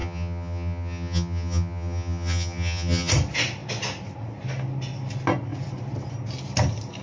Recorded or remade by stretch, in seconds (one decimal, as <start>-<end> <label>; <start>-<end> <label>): 0.0-3.1 remade; 3.1-7.0 recorded